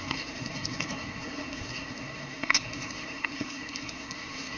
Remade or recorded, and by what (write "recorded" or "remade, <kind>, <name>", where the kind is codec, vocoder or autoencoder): remade, codec, SNAC